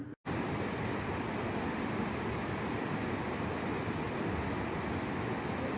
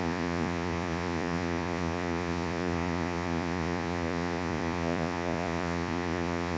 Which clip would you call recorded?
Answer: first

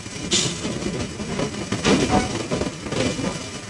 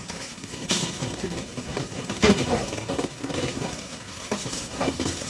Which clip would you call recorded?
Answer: first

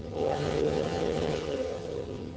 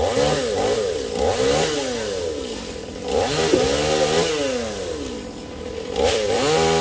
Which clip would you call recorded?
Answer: second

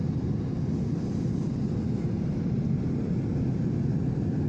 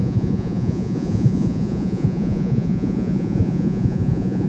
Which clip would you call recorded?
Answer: first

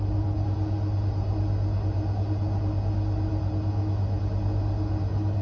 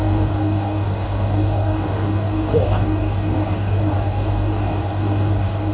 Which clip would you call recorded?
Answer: first